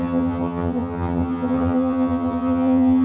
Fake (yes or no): yes